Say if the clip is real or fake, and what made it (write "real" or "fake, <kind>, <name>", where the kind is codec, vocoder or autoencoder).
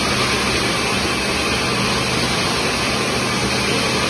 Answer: real